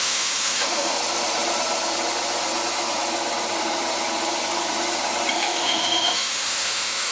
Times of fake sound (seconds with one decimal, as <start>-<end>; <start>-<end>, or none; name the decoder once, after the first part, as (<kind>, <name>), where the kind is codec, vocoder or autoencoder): 0.0-1.0 (autoencoder, DAC-VAE); 5.3-7.1